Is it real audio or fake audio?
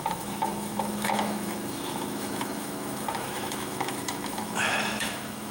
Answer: fake